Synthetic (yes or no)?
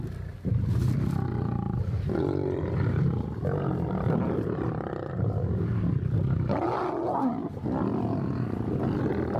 no